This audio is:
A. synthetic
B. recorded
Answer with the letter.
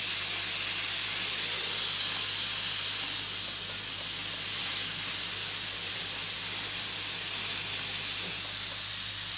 B